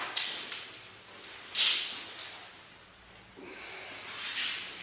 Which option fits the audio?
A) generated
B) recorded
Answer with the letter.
B